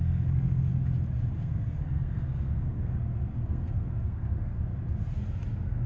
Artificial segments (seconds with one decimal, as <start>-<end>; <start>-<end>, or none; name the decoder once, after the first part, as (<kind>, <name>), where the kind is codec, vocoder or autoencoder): 0.0-0.7 (codec, SNAC); 1.4-4.7; 5.5-5.9

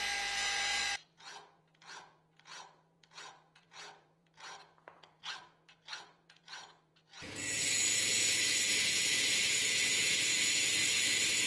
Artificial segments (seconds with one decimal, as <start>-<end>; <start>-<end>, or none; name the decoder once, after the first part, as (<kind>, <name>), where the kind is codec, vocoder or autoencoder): 0.0-11.5 (vocoder, Vocos)